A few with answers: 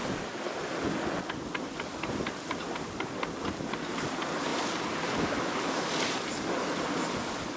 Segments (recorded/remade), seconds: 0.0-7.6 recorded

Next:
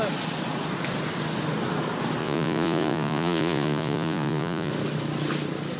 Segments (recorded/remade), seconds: 0.0-2.2 recorded; 2.2-4.7 remade; 4.7-5.8 recorded

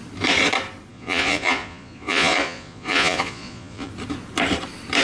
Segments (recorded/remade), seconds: 0.0-0.9 recorded; 0.9-3.9 remade; 3.9-5.0 recorded

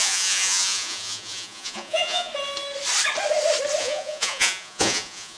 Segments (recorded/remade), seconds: 0.0-2.3 remade; 2.3-3.8 recorded; 3.8-5.4 remade

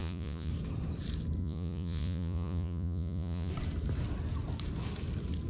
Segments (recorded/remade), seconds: 0.0-0.5 remade; 0.5-1.4 recorded; 1.4-3.5 remade; 3.5-5.5 recorded

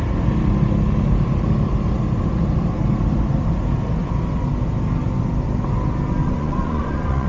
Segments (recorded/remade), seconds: 0.0-6.2 recorded; 6.2-7.3 remade

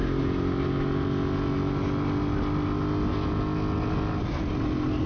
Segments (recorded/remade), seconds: 0.0-5.1 recorded

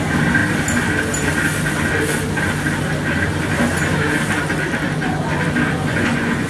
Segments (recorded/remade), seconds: 0.0-5.9 recorded; 5.9-6.5 remade